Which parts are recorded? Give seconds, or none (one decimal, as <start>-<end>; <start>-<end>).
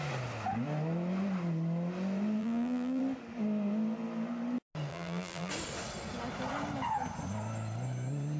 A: 0.0-2.4; 3.0-4.9; 5.5-8.4